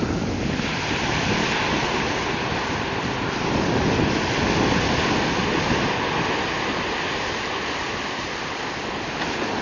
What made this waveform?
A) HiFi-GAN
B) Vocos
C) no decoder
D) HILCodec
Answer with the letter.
C